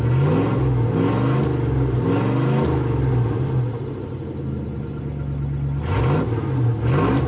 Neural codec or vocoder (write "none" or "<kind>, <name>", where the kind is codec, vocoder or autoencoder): none